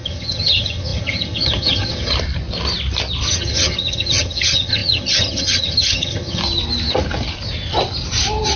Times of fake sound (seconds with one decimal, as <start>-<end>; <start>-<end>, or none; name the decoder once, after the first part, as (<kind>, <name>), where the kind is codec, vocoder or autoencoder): 0.0-2.1 (vocoder, HiFi-GAN); 3.3-6.4